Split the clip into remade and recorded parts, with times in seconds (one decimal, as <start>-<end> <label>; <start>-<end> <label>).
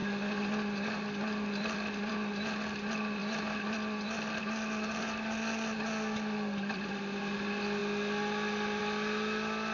0.0-9.7 recorded